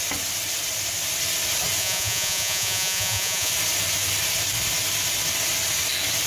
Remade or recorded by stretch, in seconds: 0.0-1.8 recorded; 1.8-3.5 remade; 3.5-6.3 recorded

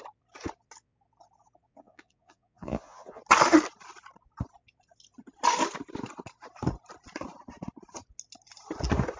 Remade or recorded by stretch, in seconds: 0.0-1.7 recorded; 1.7-3.2 remade; 3.2-9.2 recorded

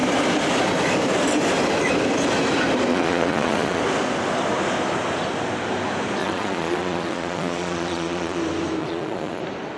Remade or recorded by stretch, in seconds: 0.0-2.9 recorded; 2.9-3.8 remade; 3.8-6.2 recorded; 6.2-8.4 remade; 8.4-8.8 recorded; 8.8-9.4 remade; 9.4-9.8 recorded

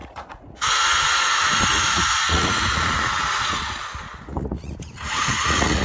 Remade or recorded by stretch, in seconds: 0.0-5.8 remade

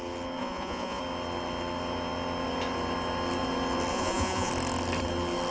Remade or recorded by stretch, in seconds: 0.0-0.4 recorded; 0.4-1.0 remade; 1.0-3.9 recorded; 3.9-4.5 remade; 4.5-5.5 recorded

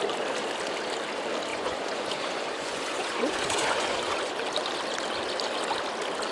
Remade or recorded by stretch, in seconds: 0.0-1.5 recorded; 1.5-4.3 remade; 4.3-6.3 recorded

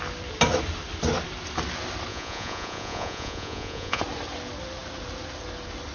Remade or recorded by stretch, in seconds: 0.0-2.1 recorded; 2.1-4.0 remade; 4.0-5.9 recorded